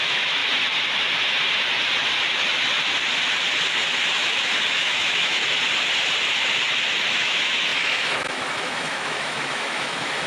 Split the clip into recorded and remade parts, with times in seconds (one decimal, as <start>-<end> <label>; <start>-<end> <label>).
0.0-0.4 remade; 0.4-4.1 recorded; 4.1-5.4 remade; 5.4-7.1 recorded; 7.1-10.3 remade